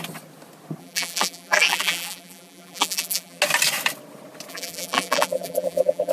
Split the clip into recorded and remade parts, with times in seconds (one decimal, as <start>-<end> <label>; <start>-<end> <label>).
0.0-0.8 recorded; 0.8-3.4 remade; 3.4-4.5 recorded; 4.5-6.1 remade